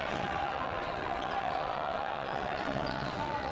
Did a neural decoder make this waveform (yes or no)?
yes